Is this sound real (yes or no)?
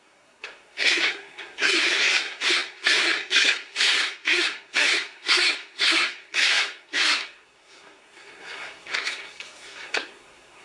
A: no